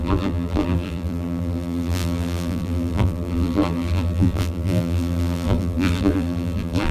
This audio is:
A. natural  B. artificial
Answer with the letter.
B